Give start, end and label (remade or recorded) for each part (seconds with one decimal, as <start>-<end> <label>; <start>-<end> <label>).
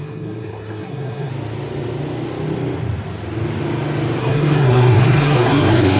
0.0-1.3 remade; 1.3-4.2 recorded; 4.2-6.0 remade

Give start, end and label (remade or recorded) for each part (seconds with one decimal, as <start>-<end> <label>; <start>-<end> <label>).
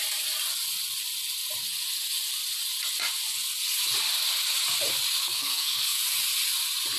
0.0-5.2 recorded; 5.2-6.0 remade; 6.0-7.0 recorded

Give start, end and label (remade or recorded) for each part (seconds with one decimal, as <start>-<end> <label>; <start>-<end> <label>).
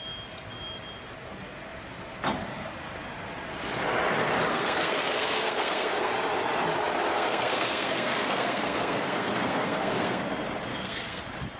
0.0-4.5 recorded; 4.5-6.1 remade; 6.1-7.1 recorded; 7.1-10.2 remade; 10.2-10.7 recorded; 10.7-11.2 remade; 11.2-11.6 recorded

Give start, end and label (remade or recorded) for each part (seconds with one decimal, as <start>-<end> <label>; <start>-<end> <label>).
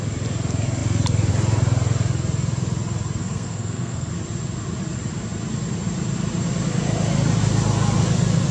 0.0-3.2 recorded; 3.2-4.1 remade; 4.1-8.5 recorded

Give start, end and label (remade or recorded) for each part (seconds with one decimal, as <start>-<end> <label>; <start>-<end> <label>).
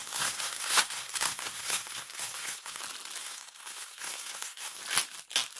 0.0-2.8 remade; 2.8-3.2 recorded; 3.2-4.8 remade; 4.8-5.6 recorded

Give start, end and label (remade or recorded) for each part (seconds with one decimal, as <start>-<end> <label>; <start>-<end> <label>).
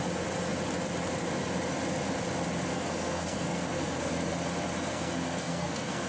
0.0-2.7 recorded; 2.7-4.1 remade; 4.1-4.9 recorded; 4.9-6.1 remade